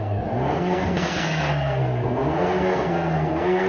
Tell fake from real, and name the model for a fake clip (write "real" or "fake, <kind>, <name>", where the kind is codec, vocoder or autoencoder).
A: fake, codec, SNAC